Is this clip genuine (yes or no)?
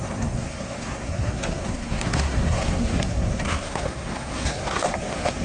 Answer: no